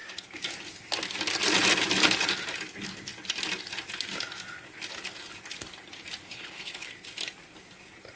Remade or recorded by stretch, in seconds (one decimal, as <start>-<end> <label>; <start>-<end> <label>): 0.0-6.2 recorded; 6.2-6.9 remade; 6.9-8.2 recorded